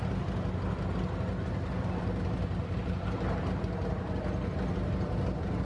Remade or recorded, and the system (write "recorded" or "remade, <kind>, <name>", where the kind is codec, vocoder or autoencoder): recorded